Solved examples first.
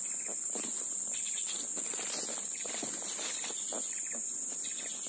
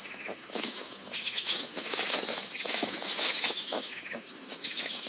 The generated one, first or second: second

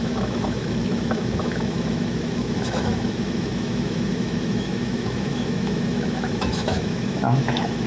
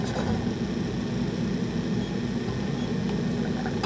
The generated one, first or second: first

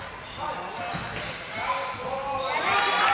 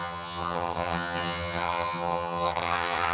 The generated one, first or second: second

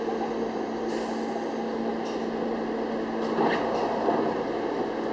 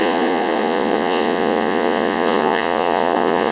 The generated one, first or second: second